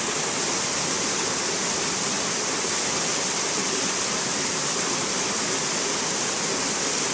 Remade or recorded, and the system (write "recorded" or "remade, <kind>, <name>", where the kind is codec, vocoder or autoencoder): recorded